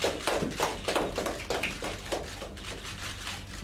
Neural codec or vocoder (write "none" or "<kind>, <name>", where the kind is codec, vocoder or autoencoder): none